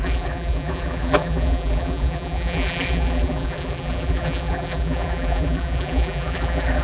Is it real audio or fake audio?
fake